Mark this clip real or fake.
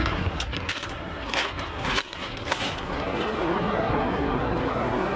fake